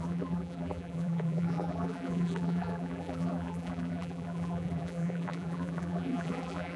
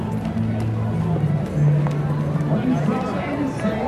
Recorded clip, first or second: second